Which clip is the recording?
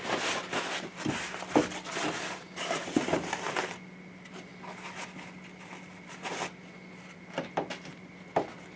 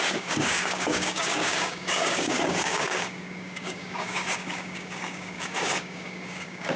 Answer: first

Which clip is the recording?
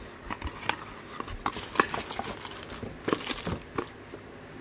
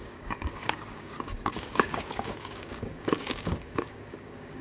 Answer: first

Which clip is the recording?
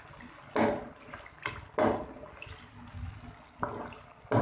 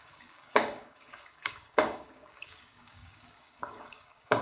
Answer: first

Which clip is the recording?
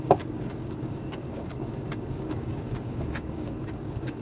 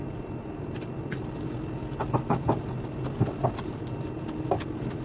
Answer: second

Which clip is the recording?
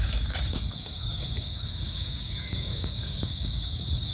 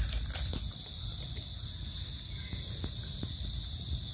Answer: second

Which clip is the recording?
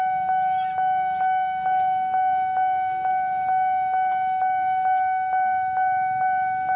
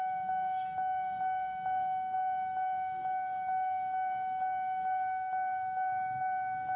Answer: first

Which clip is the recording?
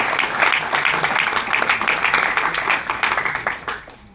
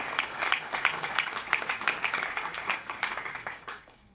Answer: first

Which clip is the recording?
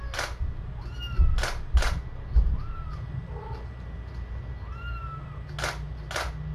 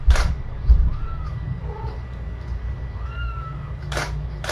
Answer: first